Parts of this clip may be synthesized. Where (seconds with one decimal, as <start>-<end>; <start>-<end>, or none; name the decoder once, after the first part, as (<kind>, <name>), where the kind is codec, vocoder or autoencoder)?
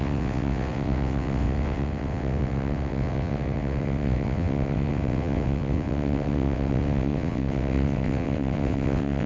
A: 0.0-9.3 (vocoder, WaveNeXt)